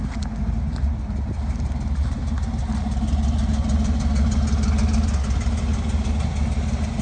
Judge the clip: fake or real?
real